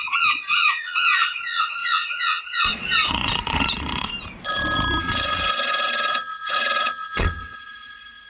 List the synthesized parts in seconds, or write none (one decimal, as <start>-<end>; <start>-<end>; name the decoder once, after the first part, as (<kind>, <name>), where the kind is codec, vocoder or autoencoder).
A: 0.0-4.1 (vocoder, WaveNeXt); 5.0-8.3